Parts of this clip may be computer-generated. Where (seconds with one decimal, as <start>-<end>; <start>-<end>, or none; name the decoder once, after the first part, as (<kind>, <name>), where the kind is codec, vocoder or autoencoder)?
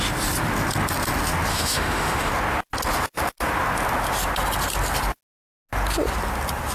1.5-2.3 (autoencoder, DAC-VAE)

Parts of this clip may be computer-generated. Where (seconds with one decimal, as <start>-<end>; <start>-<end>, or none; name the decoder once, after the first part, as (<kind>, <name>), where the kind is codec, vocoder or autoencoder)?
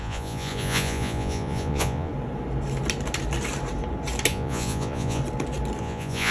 0.0-2.1 (vocoder, Vocos); 4.3-5.2; 5.8-6.3